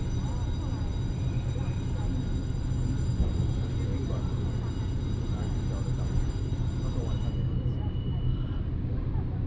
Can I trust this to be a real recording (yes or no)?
yes